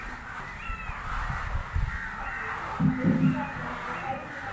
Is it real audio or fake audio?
real